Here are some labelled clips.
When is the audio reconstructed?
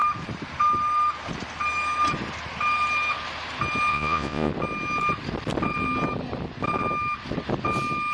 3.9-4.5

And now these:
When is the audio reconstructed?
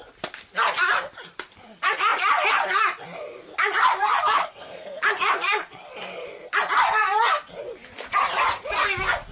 4.4-5.0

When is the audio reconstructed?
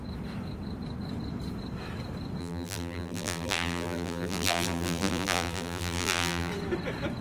2.4-6.5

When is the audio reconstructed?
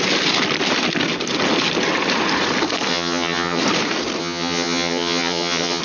2.9-3.6; 4.2-5.8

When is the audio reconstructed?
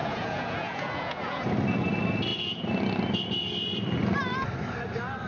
0.0-1.4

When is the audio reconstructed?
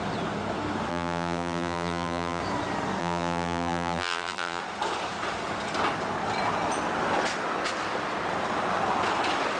0.9-2.4; 3.0-4.6